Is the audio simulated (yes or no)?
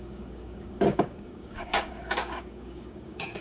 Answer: yes